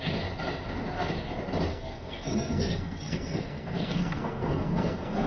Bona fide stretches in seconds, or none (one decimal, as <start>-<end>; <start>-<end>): 0.0-1.7

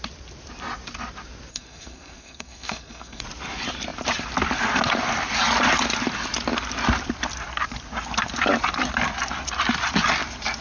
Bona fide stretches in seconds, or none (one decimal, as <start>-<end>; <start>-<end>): 0.0-1.5; 3.2-10.6

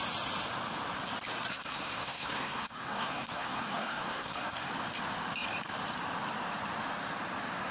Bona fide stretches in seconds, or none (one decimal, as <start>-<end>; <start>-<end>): 0.0-1.5; 4.7-7.7

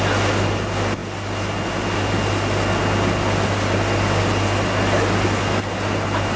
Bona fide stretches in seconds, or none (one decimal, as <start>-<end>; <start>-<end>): 0.0-6.4

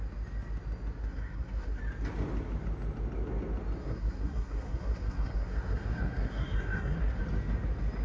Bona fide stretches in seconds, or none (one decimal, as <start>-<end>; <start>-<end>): 0.0-1.0; 1.8-3.8; 7.2-8.0

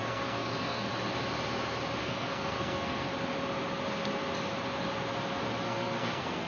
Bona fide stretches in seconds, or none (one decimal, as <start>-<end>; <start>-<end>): 0.9-2.0; 3.1-5.6